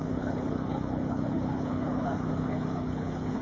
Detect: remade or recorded remade